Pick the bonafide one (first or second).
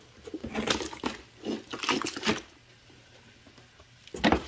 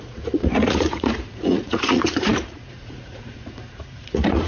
first